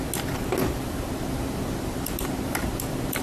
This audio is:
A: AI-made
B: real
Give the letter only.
B